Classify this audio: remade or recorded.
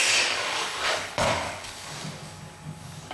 remade